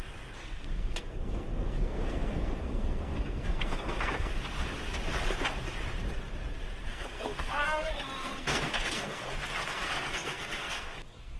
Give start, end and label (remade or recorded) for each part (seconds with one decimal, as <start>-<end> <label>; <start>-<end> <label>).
0.0-0.4 recorded; 0.4-4.3 remade; 4.3-6.8 recorded; 6.8-9.2 remade; 9.2-9.7 recorded; 9.7-11.4 remade